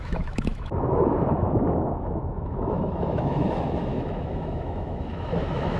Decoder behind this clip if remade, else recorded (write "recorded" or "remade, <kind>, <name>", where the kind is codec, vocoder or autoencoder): remade, autoencoder, DAC-VAE